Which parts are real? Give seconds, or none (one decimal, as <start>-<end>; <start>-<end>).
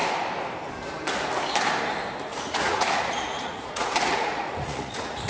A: 0.0-2.3